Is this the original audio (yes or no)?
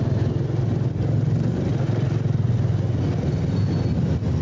yes